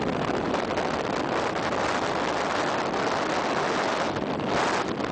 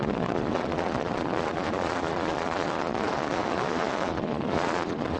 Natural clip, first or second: first